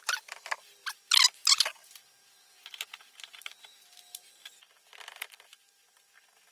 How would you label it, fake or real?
real